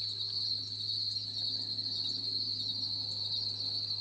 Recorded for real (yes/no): yes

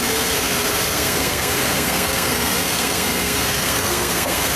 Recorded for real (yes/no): no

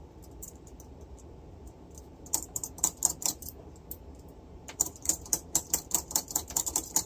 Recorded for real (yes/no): no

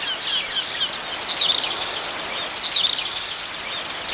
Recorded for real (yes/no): yes